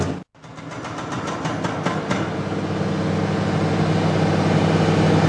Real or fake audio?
real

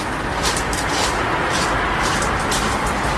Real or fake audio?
real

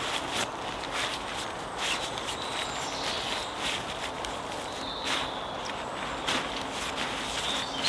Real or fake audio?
real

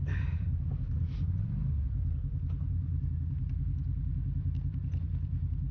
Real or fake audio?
real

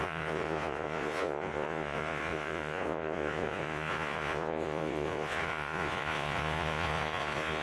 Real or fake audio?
fake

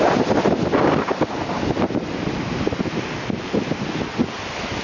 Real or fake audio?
real